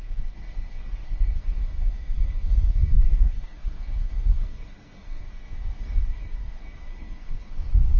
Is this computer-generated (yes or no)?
yes